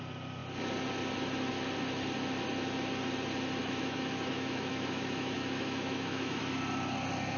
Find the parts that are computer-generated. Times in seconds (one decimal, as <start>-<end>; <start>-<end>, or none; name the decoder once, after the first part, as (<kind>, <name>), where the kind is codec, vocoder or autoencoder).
3.6-6.4 (autoencoder, DAC-VAE)